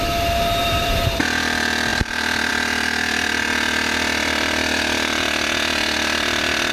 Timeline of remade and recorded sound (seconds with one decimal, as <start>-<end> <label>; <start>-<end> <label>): 0.0-0.6 recorded; 0.6-1.2 remade; 1.2-6.7 recorded